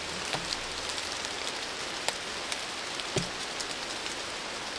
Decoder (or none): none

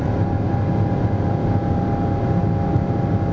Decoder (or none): none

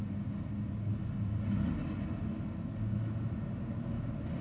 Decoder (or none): none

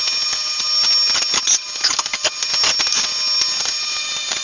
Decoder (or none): none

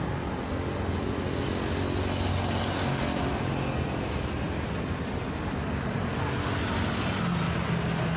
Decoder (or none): none